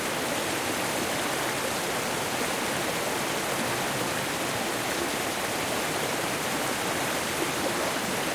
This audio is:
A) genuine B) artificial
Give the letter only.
A